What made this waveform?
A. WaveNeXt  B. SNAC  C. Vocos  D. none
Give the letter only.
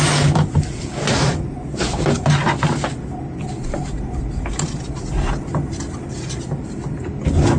D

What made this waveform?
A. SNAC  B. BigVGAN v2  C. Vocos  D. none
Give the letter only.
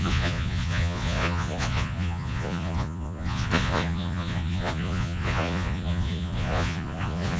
C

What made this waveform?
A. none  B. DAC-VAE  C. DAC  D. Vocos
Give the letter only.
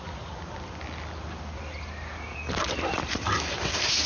A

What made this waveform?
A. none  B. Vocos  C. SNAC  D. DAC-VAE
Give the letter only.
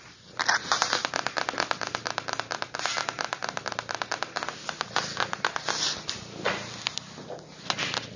A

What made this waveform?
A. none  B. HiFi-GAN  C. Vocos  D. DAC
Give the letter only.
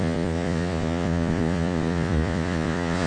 C